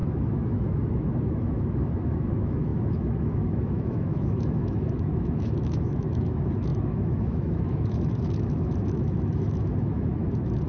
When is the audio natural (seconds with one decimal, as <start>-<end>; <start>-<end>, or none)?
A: none